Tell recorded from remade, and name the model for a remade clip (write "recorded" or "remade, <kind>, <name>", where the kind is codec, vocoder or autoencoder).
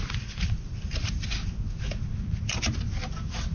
recorded